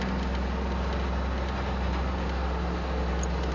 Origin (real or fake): real